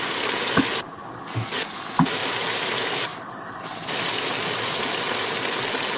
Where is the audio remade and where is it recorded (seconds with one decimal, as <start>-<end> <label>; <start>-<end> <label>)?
0.0-2.2 recorded; 2.2-4.7 remade; 4.7-6.0 recorded